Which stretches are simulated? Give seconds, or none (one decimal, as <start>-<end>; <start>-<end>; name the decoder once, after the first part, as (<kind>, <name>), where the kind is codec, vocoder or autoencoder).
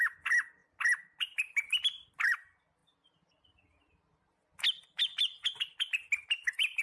none